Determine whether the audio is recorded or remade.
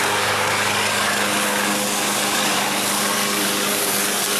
remade